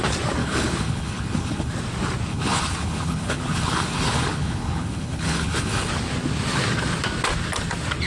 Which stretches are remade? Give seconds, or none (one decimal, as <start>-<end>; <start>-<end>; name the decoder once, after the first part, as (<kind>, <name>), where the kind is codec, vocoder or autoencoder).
0.4-1.7 (codec, HILCodec); 2.3-5.9